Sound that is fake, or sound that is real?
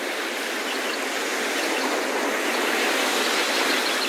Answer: real